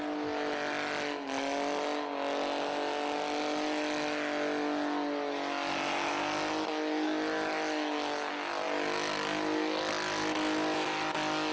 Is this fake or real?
real